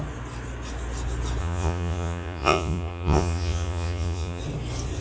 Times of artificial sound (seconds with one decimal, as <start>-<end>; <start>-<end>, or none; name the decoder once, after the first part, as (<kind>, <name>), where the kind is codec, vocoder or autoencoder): 1.4-4.4 (vocoder, Vocos)